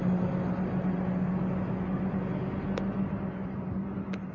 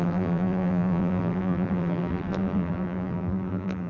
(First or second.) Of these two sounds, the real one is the first